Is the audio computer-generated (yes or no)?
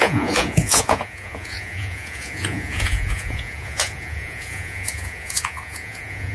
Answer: yes